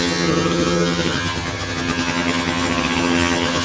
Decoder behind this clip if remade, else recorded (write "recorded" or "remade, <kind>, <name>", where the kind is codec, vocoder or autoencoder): remade, vocoder, HiFi-GAN